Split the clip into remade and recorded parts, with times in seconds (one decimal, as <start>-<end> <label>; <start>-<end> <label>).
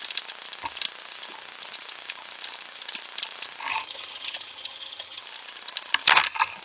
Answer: 0.0-3.7 recorded; 3.7-5.2 remade; 5.2-6.6 recorded